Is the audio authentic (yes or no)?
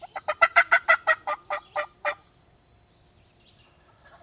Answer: no